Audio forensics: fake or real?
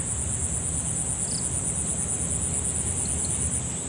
real